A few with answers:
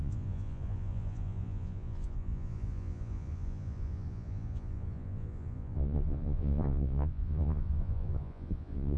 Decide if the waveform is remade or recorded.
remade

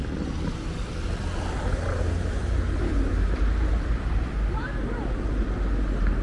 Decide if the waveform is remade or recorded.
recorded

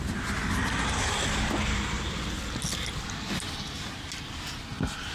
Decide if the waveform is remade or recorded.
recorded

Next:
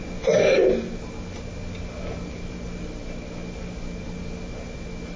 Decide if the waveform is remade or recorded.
recorded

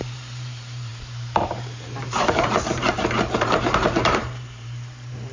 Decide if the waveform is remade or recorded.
remade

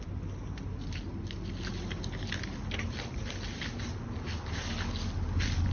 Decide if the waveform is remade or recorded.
recorded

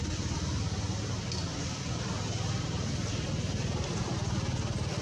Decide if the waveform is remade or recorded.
recorded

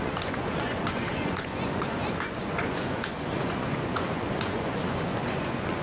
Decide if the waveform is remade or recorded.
remade